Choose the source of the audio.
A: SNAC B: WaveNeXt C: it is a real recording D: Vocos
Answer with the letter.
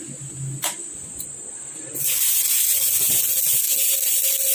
C